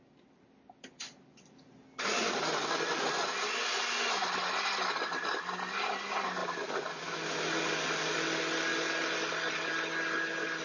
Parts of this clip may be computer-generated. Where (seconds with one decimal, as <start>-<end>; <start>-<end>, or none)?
none